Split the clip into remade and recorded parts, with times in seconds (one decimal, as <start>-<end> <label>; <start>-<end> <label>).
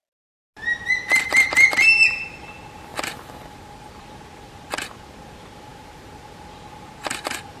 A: 0.0-1.3 recorded; 1.3-2.5 remade; 2.5-2.9 recorded; 2.9-3.9 remade; 3.9-7.6 recorded